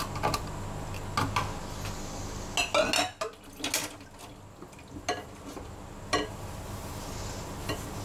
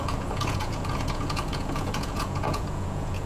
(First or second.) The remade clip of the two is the second